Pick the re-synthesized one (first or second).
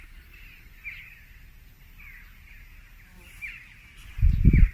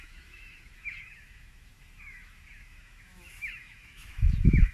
second